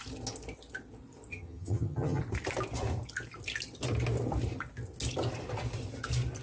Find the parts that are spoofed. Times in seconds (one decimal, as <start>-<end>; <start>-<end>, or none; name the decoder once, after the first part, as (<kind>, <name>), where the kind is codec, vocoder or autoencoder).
1.3-2.2 (vocoder, HiFi-GAN)